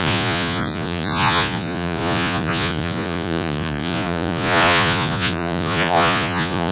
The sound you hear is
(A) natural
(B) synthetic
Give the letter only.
B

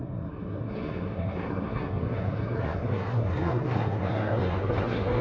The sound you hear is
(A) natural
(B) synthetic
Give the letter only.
B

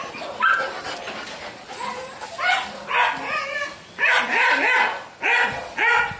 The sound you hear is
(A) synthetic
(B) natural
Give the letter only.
B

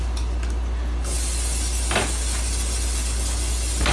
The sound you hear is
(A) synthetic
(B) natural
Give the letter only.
B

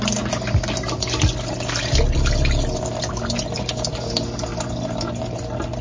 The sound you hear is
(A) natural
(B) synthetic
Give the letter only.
A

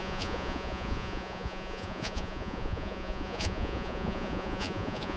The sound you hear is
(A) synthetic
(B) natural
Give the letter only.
A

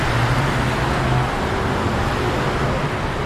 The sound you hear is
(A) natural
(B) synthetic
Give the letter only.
A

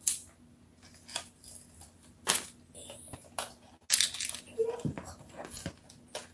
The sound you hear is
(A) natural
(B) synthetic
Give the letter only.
A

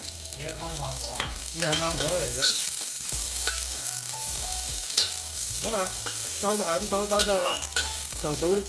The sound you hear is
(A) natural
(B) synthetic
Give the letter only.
B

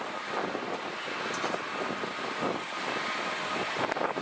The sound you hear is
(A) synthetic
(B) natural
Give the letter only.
B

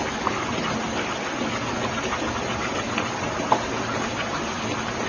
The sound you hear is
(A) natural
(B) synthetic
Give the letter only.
A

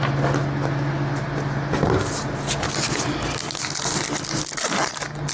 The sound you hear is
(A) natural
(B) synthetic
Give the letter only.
A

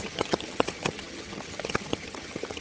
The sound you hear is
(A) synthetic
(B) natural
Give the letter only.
A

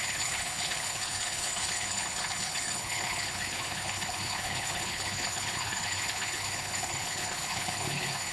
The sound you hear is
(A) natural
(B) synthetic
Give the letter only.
B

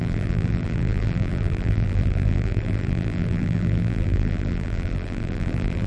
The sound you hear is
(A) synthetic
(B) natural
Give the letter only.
A